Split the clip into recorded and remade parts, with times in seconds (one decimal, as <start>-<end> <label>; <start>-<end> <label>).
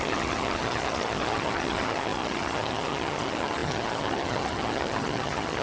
0.0-5.6 remade